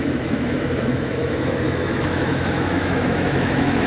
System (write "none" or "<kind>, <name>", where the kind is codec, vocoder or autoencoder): autoencoder, DAC-VAE